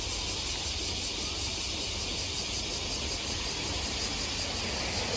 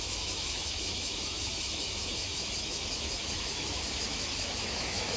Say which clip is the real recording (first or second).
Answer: first